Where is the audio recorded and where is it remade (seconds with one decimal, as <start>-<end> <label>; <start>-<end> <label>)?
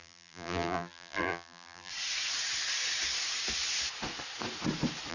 0.0-1.9 remade; 1.9-5.1 recorded